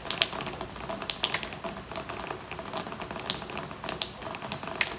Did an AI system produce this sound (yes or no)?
no